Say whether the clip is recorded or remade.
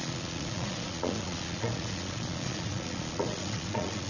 remade